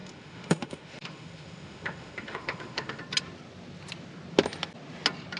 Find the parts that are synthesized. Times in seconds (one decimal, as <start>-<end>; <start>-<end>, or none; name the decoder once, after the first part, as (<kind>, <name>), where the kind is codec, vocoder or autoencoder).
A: 0.0-3.0 (autoencoder, DAC-VAE)